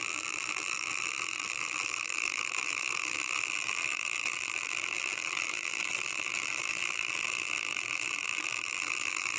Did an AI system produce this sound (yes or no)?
yes